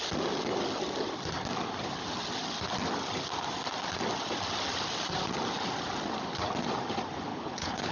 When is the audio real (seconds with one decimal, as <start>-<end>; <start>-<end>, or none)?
0.0-7.3